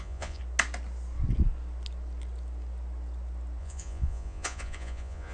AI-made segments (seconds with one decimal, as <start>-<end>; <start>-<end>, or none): 0.0-0.4; 3.6-5.3